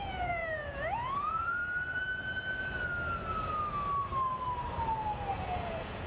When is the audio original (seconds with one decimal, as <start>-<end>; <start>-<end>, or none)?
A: 1.6-5.3

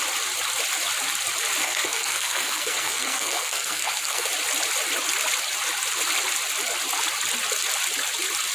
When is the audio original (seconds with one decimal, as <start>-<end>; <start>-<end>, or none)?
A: 0.0-1.6; 4.3-8.5

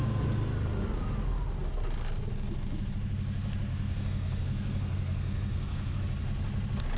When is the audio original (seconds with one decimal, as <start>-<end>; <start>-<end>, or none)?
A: 0.0-3.7; 6.0-7.0